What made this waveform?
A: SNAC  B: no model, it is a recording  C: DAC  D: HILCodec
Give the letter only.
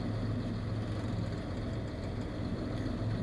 B